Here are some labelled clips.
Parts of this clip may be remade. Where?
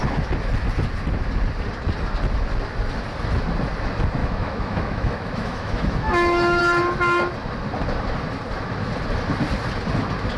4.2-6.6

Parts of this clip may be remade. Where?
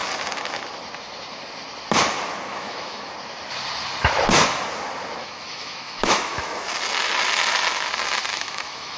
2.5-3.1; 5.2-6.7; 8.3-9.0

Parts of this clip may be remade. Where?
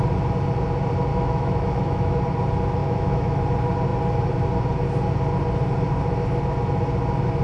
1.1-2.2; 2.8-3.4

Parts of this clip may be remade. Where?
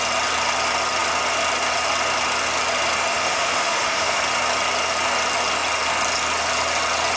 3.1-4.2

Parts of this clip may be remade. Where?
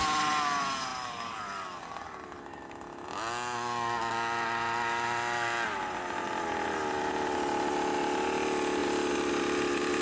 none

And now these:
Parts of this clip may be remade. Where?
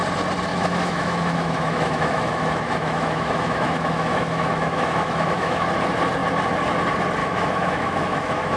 0.5-5.7; 7.2-8.6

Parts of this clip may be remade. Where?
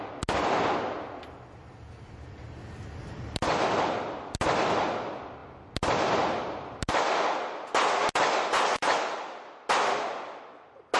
none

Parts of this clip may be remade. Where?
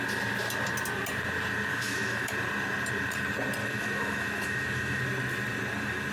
1.7-2.3; 3.6-5.0